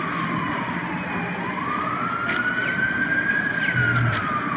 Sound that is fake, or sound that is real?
real